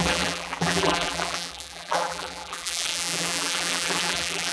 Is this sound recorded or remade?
remade